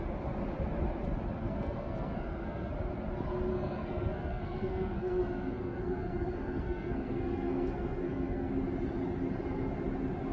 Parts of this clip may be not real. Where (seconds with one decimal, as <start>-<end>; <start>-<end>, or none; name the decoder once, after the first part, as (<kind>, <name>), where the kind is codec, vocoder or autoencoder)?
1.4-2.7 (codec, SNAC); 3.5-8.5